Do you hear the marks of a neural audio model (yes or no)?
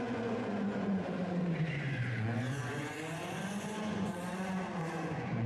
yes